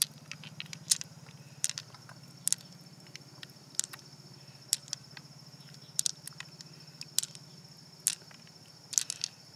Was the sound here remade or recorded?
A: recorded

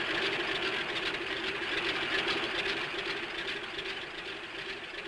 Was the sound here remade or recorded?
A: recorded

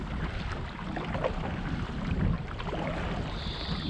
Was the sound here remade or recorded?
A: recorded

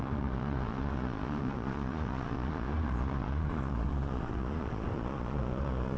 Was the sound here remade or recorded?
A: remade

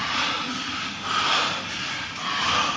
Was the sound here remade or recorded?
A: recorded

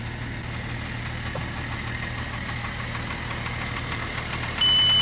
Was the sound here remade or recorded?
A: recorded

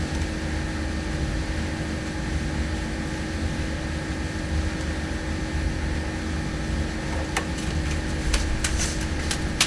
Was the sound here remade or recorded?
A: recorded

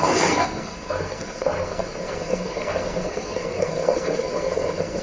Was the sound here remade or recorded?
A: remade